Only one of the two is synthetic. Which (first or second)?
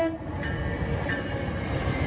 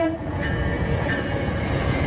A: second